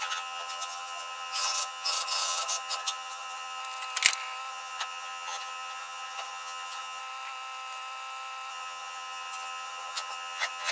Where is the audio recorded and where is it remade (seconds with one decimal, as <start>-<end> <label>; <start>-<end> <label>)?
0.0-3.6 remade; 3.6-4.5 recorded; 4.5-7.0 remade; 7.0-8.5 recorded; 8.5-10.7 remade